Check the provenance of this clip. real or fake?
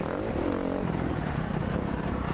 real